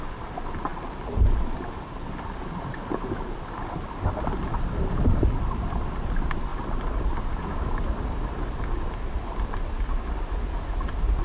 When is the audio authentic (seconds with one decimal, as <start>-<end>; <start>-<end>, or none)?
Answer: 0.0-11.2